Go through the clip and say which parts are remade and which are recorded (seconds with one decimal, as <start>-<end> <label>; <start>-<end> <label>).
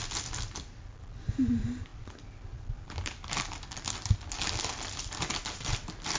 0.0-6.2 recorded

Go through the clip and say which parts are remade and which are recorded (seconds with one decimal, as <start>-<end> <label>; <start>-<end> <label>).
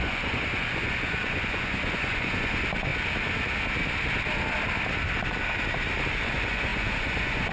0.0-2.9 remade; 2.9-6.1 recorded; 6.1-7.5 remade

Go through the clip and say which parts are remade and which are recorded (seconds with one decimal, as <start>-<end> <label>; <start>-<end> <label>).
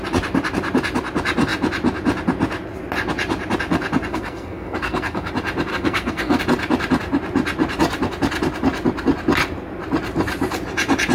0.0-4.1 recorded; 4.1-5.3 remade; 5.3-5.7 recorded; 5.7-6.4 remade; 6.4-11.1 recorded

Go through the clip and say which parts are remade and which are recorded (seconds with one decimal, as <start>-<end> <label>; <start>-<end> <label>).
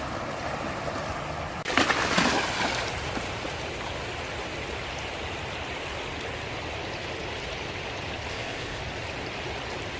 0.0-8.3 recorded; 8.3-8.8 remade; 8.8-10.0 recorded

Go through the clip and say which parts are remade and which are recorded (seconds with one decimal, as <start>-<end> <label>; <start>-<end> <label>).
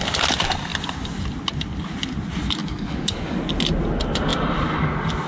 0.0-2.6 recorded; 2.6-3.5 remade; 3.5-5.3 recorded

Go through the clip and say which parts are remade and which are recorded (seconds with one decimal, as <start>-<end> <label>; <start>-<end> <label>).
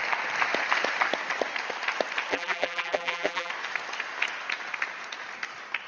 0.0-2.3 recorded; 2.3-3.5 remade; 3.5-5.9 recorded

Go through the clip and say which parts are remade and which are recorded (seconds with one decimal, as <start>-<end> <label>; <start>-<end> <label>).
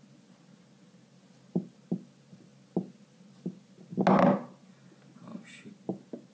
0.0-6.3 recorded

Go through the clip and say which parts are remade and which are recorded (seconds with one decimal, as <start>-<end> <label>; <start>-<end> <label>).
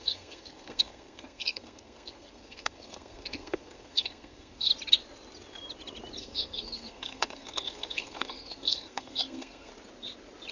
0.0-4.7 remade; 4.7-6.2 recorded; 6.2-9.7 remade; 9.7-10.5 recorded